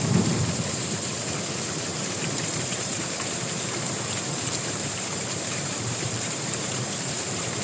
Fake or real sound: fake